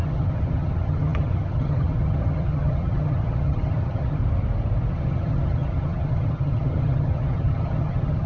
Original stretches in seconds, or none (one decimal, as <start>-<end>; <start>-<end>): 4.2-4.9